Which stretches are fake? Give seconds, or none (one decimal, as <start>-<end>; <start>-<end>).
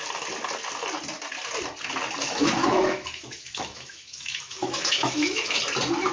2.2-5.6